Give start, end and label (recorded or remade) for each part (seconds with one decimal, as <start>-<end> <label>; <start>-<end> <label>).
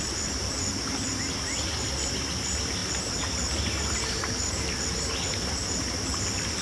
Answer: 0.0-6.6 recorded